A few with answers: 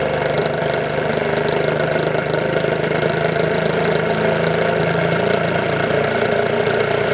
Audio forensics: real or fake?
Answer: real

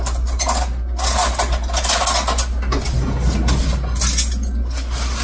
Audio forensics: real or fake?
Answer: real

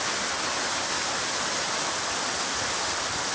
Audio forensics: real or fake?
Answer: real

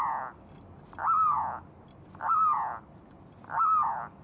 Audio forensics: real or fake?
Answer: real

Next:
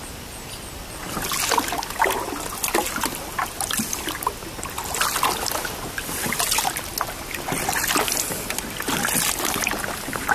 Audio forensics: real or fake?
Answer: real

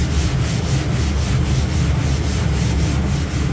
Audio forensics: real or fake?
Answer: real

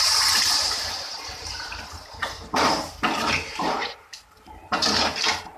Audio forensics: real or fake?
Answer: fake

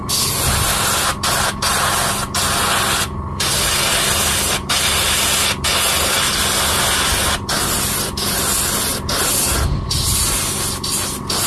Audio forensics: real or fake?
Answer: real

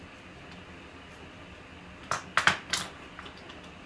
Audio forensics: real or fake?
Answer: real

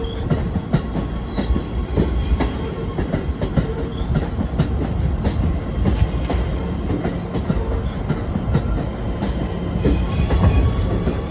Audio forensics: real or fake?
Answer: real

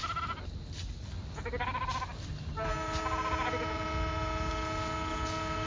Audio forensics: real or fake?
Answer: real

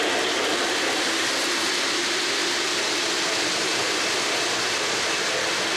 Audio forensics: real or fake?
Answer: real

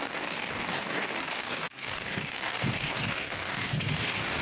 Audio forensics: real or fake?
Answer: fake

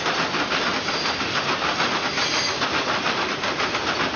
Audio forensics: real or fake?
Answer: real